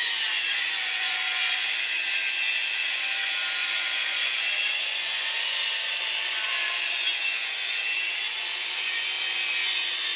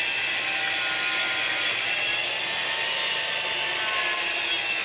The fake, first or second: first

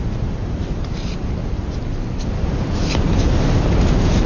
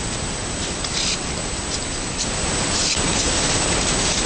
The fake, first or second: second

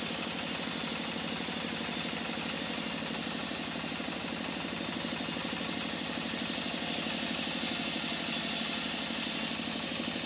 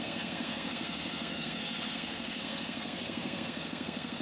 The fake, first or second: second